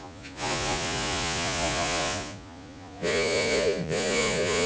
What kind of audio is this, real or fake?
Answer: fake